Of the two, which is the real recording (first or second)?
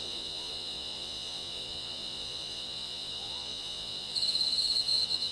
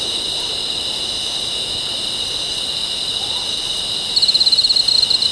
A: second